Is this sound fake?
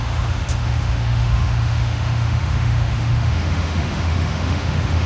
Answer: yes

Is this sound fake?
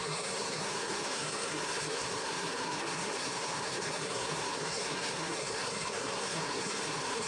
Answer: yes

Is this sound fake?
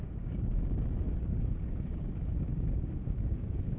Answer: yes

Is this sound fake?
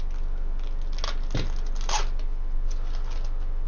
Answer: no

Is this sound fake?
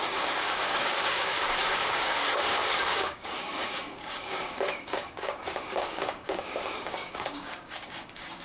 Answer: yes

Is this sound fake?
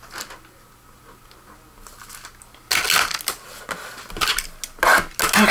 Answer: no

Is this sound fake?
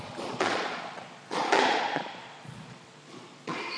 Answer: yes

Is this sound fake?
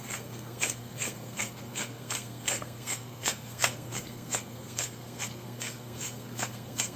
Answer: yes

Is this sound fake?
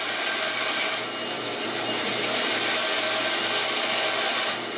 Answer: yes